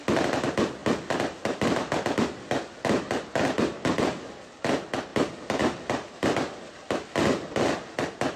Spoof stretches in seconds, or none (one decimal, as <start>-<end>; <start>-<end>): 5.1-6.2